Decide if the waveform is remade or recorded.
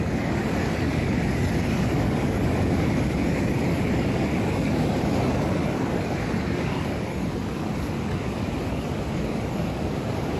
remade